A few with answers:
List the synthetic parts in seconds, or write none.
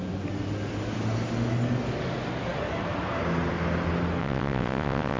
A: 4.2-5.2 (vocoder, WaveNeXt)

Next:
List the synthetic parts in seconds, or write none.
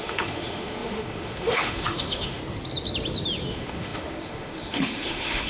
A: 0.0-2.4 (autoencoder, DAC-VAE); 3.5-5.5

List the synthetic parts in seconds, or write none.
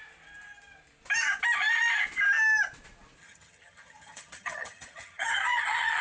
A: 3.2-6.0 (vocoder, HiFi-GAN)